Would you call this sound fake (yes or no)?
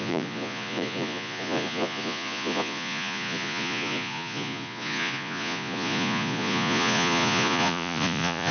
yes